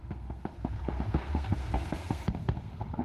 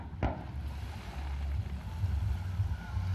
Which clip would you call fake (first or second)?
first